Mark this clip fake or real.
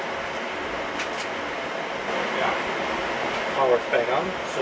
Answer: real